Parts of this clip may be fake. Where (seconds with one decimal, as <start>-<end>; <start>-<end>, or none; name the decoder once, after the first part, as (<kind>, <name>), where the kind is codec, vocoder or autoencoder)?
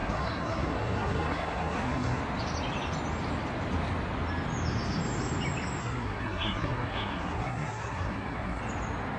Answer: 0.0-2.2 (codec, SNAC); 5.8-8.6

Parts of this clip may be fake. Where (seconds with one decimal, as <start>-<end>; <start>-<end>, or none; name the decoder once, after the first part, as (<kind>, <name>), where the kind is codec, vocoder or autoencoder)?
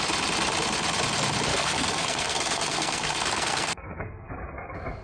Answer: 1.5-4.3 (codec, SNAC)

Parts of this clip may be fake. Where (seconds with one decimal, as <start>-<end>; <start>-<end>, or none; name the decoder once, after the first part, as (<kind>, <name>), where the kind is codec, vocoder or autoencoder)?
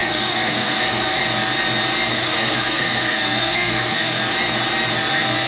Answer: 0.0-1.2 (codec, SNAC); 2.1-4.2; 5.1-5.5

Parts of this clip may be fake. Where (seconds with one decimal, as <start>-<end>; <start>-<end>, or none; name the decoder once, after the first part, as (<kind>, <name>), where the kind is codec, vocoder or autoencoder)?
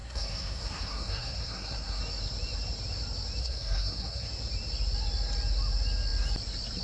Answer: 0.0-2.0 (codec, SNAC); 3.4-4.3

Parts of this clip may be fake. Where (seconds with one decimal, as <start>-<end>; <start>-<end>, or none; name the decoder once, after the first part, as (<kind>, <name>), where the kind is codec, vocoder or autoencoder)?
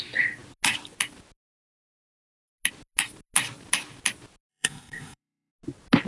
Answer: 4.5-5.5 (codec, SNAC)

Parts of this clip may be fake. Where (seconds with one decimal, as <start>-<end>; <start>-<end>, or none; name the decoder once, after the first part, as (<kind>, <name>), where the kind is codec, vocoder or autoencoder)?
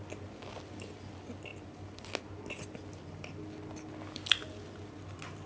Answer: none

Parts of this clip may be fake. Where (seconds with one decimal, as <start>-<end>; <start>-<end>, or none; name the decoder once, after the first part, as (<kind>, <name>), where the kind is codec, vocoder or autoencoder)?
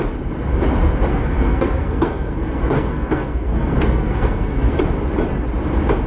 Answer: 1.1-4.8 (codec, SNAC)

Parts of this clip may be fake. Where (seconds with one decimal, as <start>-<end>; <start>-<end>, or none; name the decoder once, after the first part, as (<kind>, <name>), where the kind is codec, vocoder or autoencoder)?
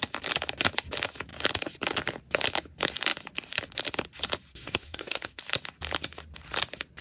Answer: 4.5-5.4 (codec, SNAC)